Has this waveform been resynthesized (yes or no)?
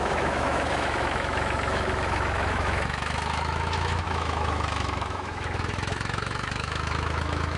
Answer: yes